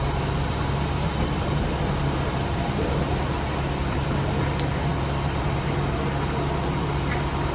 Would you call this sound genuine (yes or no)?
yes